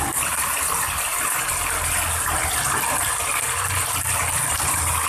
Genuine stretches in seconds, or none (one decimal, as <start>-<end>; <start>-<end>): 0.0-5.1